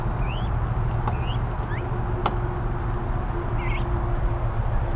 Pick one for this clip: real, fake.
real